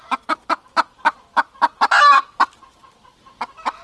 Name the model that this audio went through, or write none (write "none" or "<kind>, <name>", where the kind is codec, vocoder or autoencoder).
none